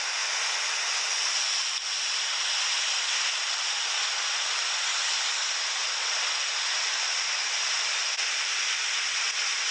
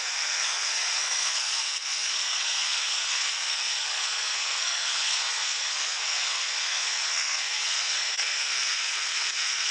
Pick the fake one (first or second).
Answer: second